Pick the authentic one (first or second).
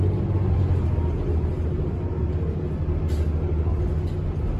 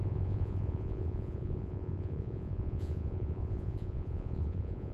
first